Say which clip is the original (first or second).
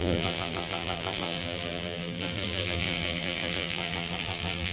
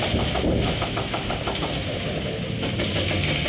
second